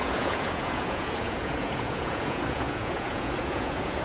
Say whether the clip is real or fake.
fake